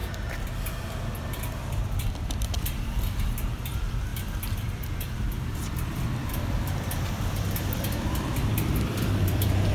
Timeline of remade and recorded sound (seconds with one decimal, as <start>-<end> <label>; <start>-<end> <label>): 0.0-2.0 recorded; 2.0-9.7 remade